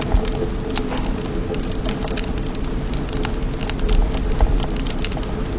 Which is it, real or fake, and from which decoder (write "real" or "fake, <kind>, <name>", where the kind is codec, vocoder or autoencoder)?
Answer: real